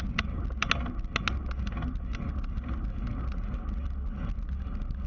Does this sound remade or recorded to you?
recorded